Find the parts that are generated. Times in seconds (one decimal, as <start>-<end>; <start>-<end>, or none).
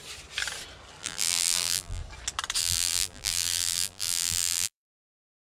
1.0-2.0; 2.6-5.6